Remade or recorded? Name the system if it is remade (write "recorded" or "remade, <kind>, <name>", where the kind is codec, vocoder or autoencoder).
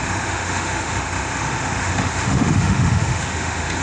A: remade, autoencoder, DAC-VAE